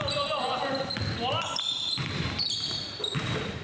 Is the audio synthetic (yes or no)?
no